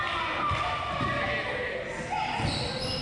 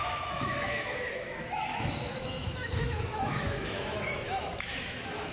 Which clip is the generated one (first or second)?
second